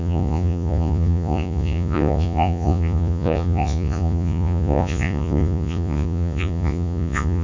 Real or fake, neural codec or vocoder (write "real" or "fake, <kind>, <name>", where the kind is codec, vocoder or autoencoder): fake, vocoder, Vocos